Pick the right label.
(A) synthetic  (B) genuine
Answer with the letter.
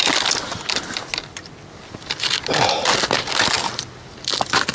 B